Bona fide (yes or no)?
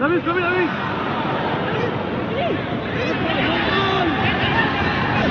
yes